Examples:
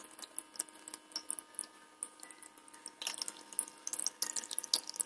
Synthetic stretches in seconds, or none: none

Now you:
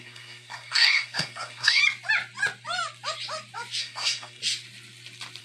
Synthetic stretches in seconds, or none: 0.0-1.8 (codec, SNAC); 3.8-4.4

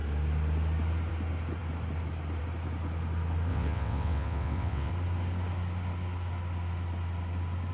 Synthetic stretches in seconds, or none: 3.5-4.9 (vocoder, WaveNeXt)

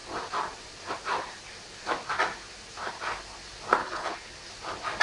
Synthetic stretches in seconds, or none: 3.8-4.3 (codec, HILCodec)